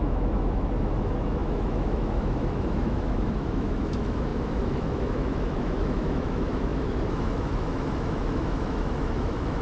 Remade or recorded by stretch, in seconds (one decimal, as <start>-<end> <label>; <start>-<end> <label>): 0.0-9.6 remade